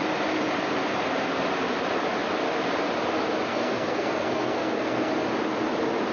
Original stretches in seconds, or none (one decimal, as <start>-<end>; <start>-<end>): 0.0-3.5; 5.1-6.1